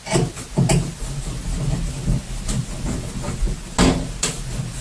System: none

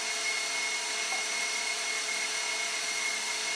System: none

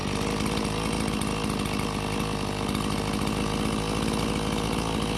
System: none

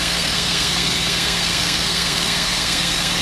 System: codec, SNAC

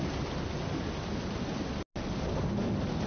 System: none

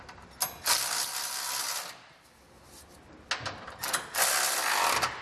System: none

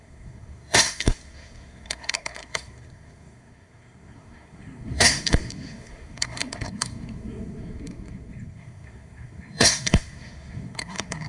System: codec, SNAC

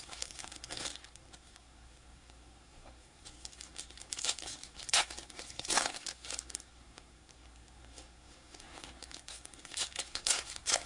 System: codec, SNAC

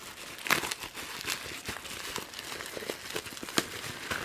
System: none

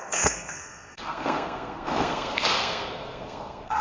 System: codec, SNAC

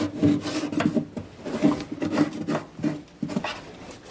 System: none